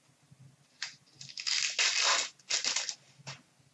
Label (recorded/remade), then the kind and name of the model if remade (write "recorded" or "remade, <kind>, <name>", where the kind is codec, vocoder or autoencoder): recorded